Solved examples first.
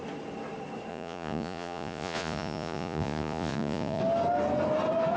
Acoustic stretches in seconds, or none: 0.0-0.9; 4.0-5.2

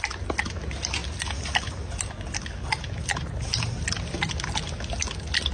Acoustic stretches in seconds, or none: 0.0-5.5